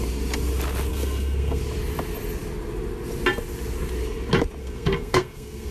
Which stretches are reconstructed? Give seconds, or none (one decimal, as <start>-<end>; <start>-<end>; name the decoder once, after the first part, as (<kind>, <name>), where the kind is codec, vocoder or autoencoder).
0.9-1.6 (codec, SNAC); 4.6-5.7